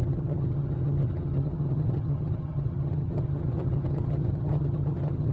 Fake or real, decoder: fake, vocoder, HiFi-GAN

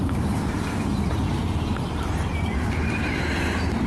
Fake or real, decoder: fake, vocoder, BigVGAN v2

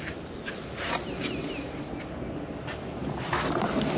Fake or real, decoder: real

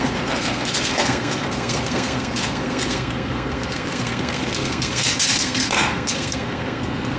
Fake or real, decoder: fake, codec, SNAC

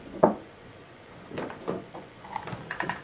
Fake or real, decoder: fake, vocoder, Vocos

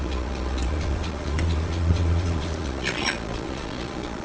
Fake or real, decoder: fake, vocoder, Vocos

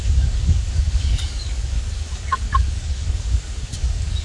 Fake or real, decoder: fake, codec, DAC